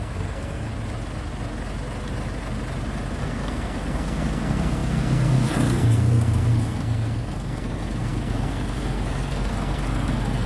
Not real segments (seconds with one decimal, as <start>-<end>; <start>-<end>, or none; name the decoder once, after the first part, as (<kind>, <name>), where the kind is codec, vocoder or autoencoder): 0.0-0.7 (codec, SNAC); 3.2-10.5